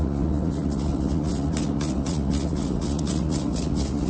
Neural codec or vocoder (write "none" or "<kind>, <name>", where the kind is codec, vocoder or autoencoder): vocoder, Vocos